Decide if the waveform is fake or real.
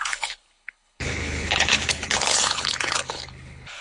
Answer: fake